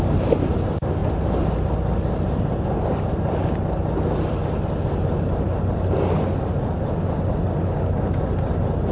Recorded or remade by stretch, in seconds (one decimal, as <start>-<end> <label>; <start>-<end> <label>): 0.0-8.9 recorded